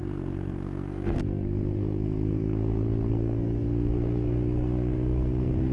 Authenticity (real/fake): fake